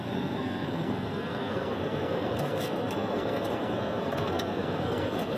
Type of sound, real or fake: fake